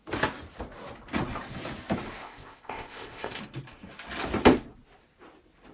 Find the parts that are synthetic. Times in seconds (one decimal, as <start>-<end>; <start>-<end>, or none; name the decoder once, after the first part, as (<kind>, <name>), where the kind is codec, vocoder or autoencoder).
2.2-3.4 (codec, ZipCodec)